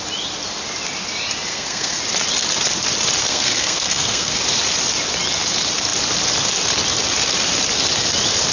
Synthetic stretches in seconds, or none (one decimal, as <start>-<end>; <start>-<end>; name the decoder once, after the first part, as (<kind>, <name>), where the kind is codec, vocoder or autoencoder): 1.5-2.0 (codec, SNAC); 3.2-4.4